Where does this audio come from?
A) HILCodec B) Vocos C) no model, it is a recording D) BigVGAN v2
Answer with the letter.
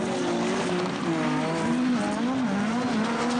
C